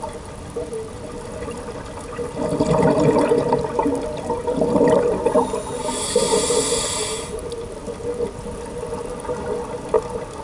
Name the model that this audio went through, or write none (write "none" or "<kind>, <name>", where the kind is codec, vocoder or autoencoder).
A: none